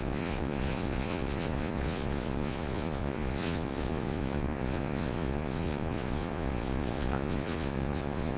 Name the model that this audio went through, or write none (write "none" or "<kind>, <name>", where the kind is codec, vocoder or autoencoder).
vocoder, Vocos